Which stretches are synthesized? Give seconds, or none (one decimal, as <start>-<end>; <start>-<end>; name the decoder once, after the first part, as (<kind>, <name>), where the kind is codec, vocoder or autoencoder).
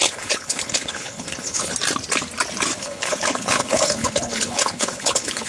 0.0-1.7 (codec, HILCodec); 2.8-5.5